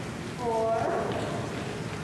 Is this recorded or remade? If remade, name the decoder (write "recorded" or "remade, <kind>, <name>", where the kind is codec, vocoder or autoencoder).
recorded